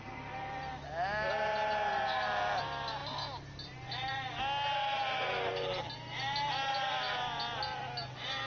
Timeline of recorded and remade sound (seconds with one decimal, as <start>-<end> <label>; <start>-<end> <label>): 0.0-8.5 recorded